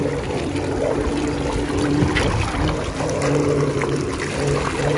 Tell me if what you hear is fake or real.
real